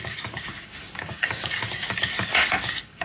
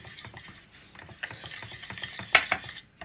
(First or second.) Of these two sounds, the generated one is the first